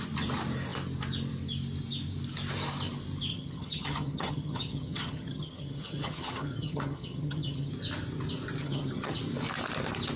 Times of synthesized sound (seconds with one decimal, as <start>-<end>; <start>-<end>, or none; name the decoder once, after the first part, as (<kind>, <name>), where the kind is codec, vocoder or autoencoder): 3.3-7.7 (vocoder, HiFi-GAN); 8.6-9.2